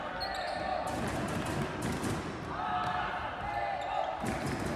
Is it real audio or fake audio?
real